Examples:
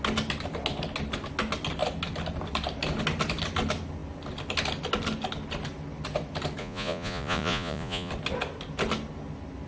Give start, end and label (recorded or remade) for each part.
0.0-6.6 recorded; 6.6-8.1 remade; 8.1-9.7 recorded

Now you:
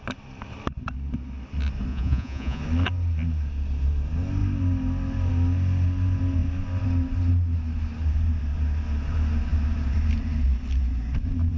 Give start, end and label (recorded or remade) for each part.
0.0-1.9 recorded; 1.9-2.6 remade; 2.6-11.6 recorded